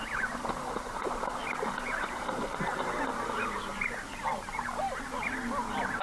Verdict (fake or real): real